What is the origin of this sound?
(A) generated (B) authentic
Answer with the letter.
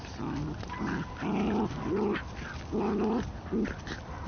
B